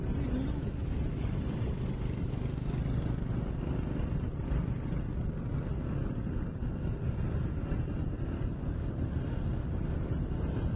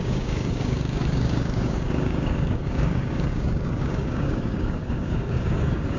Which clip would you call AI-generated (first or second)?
second